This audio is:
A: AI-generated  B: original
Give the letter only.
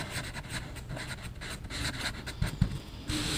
B